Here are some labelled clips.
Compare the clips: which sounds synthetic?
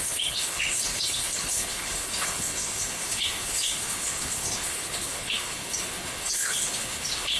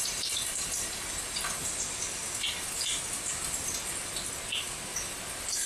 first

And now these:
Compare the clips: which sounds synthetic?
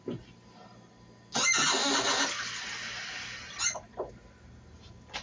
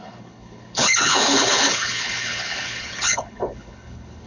second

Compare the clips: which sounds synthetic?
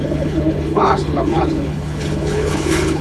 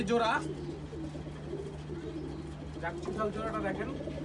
first